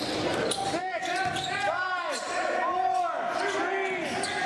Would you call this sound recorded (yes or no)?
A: yes